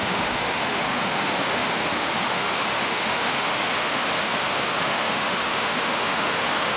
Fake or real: fake